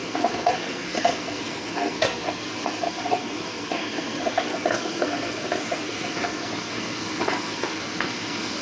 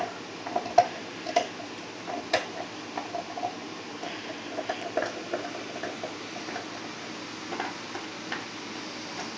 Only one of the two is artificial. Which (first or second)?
first